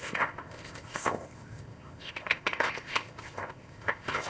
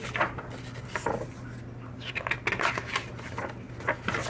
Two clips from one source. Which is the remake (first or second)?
first